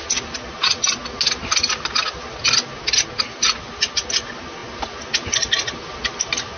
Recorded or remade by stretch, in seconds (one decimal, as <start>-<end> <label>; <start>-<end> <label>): 0.0-6.6 recorded